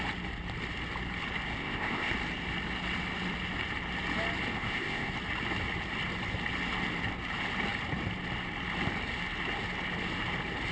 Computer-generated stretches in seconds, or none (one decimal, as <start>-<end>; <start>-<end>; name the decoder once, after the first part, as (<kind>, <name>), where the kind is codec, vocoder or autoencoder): 1.6-2.1 (codec, ZipCodec); 4.5-5.1

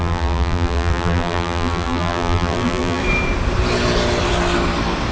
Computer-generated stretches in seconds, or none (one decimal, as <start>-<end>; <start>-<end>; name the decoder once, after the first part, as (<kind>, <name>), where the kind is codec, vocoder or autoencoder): 0.0-3.0 (vocoder, BigVGAN v2)